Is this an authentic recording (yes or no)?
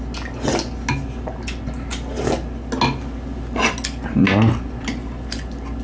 yes